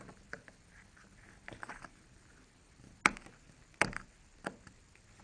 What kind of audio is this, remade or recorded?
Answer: recorded